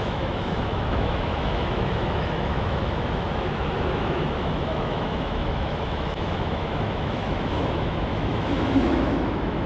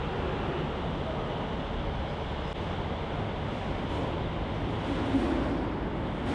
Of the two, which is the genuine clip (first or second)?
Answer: second